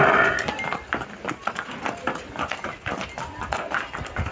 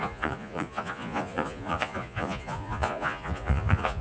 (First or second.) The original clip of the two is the first